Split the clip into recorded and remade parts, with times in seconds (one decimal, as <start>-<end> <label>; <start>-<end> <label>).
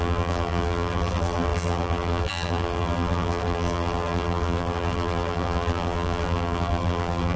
0.0-7.4 remade